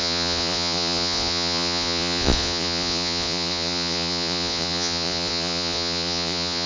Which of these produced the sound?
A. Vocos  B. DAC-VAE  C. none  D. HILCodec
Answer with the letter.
A